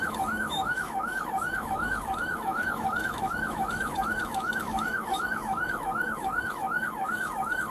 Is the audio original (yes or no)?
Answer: no